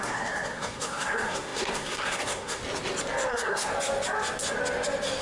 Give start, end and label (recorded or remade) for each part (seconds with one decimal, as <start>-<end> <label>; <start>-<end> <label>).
0.0-2.6 remade; 2.6-3.3 recorded; 3.3-3.7 remade; 3.7-5.2 recorded